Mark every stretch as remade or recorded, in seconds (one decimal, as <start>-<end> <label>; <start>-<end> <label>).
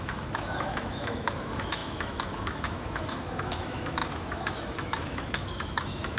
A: 0.0-6.2 remade